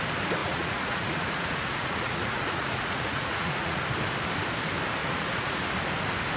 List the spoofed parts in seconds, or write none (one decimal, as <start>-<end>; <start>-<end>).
0.4-3.8; 5.0-5.6